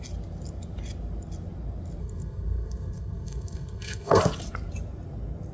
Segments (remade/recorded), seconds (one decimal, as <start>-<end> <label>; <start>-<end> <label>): 0.0-2.0 recorded; 2.0-4.2 remade; 4.2-5.5 recorded